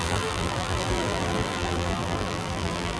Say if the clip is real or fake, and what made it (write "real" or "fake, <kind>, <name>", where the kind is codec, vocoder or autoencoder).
fake, vocoder, BigVGAN v2